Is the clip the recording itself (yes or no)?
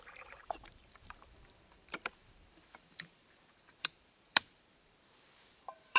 no